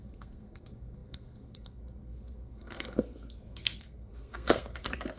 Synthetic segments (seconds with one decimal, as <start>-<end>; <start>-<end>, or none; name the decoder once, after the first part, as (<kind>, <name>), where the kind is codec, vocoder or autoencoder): 0.0-5.2 (codec, SNAC)